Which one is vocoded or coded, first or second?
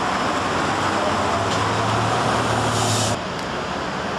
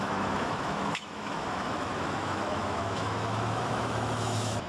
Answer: second